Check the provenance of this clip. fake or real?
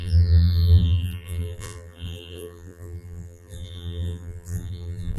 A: fake